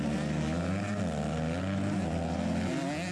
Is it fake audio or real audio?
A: real